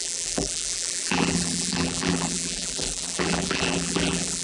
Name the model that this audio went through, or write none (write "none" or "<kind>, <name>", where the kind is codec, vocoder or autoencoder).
vocoder, BigVGAN v2